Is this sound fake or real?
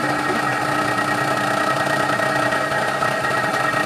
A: real